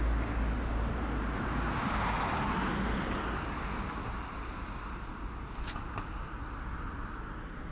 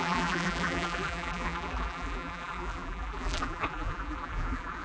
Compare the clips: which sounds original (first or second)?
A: first